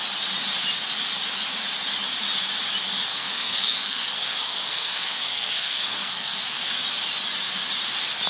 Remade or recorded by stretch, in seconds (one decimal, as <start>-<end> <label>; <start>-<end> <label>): 0.0-3.1 recorded; 3.1-6.8 remade; 6.8-8.3 recorded